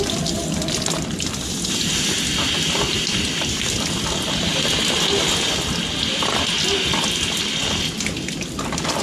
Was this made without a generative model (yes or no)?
yes